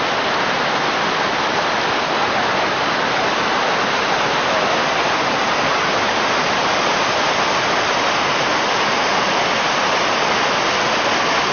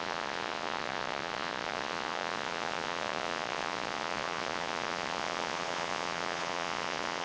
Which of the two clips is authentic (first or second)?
first